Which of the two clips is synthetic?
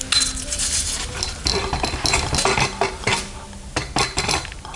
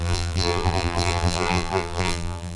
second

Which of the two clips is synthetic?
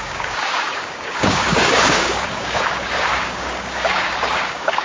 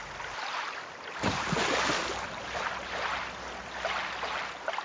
first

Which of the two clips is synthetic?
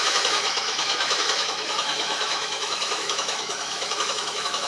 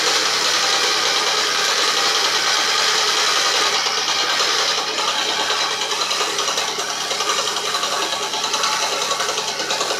first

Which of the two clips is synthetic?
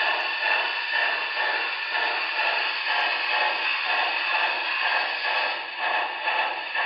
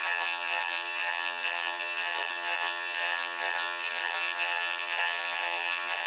second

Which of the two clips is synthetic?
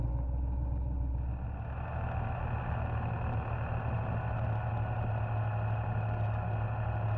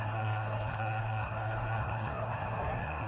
second